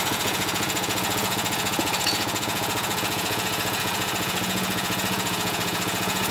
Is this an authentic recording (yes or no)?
no